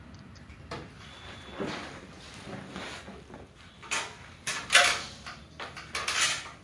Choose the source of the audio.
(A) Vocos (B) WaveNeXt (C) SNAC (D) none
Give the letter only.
D